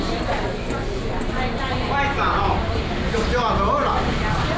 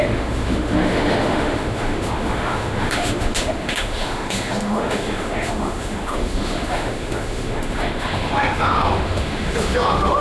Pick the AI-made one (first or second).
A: second